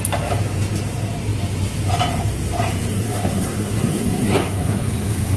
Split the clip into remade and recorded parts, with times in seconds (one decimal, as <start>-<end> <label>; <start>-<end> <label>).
0.0-2.9 recorded; 2.9-4.9 remade; 4.9-5.4 recorded